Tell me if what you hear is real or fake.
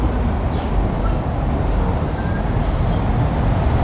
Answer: real